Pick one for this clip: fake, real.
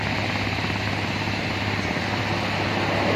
real